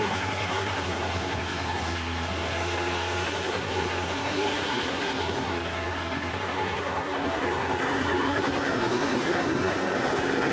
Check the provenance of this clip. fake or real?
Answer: fake